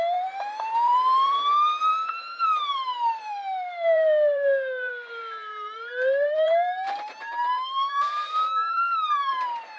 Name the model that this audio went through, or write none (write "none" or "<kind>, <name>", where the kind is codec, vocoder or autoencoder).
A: vocoder, BigVGAN v2